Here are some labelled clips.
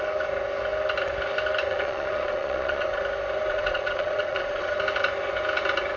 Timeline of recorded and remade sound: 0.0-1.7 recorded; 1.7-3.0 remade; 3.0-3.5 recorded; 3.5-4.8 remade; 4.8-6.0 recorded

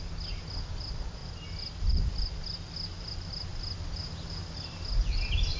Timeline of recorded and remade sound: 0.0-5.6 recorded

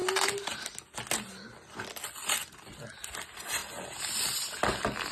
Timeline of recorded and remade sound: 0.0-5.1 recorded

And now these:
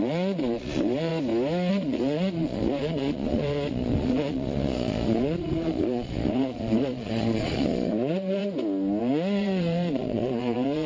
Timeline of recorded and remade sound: 0.0-1.1 remade; 1.1-1.7 recorded; 1.7-8.4 remade; 8.4-9.0 recorded; 9.0-10.9 remade

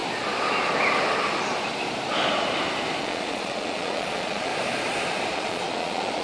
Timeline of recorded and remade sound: 0.0-3.0 recorded; 3.0-4.5 remade; 4.5-5.3 recorded; 5.3-6.2 remade